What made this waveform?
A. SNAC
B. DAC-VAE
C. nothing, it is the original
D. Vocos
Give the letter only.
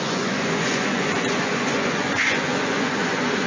D